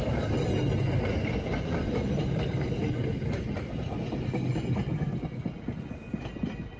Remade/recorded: recorded